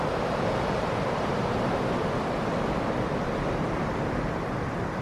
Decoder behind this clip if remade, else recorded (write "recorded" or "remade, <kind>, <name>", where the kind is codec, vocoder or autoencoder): recorded